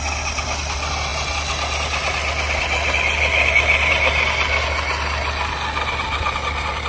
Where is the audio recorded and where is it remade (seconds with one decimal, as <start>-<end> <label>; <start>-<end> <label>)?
0.0-6.9 recorded